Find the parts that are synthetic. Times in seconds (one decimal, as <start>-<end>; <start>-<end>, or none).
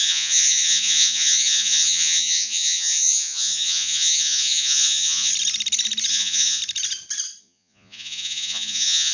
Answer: 0.0-5.3; 6.1-6.6; 7.4-9.1